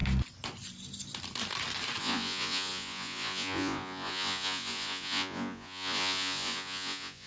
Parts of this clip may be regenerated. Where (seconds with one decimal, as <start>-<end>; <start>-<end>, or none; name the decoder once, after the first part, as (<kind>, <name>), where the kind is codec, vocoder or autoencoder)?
2.0-7.3 (vocoder, Vocos)